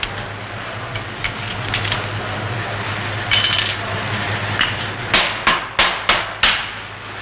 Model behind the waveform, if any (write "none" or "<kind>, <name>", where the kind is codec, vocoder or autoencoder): none